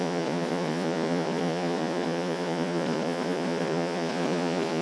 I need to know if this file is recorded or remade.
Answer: remade